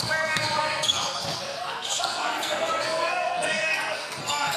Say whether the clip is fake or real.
fake